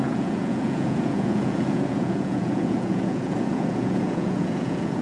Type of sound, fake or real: fake